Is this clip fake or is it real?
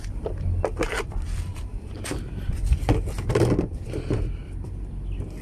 real